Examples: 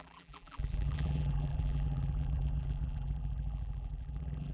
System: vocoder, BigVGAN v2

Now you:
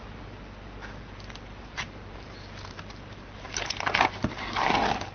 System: vocoder, BigVGAN v2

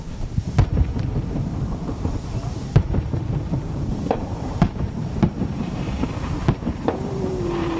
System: vocoder, BigVGAN v2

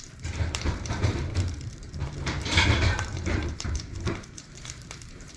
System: vocoder, BigVGAN v2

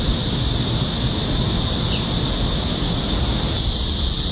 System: none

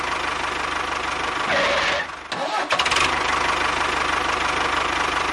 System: none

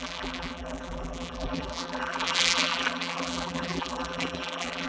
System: vocoder, BigVGAN v2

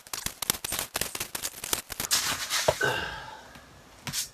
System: none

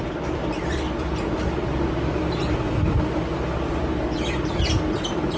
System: vocoder, BigVGAN v2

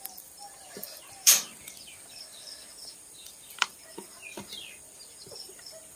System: vocoder, BigVGAN v2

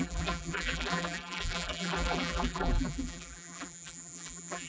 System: vocoder, BigVGAN v2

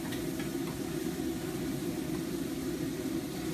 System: vocoder, BigVGAN v2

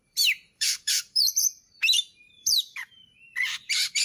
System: vocoder, BigVGAN v2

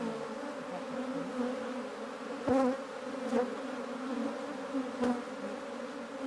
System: none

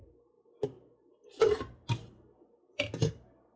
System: none